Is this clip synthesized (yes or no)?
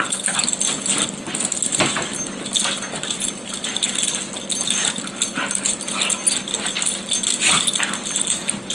no